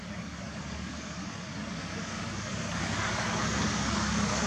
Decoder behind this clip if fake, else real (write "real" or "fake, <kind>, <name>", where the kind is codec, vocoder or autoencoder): fake, codec, DAC